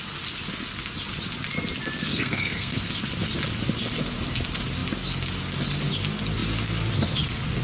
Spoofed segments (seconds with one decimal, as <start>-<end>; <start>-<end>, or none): 2.1-2.9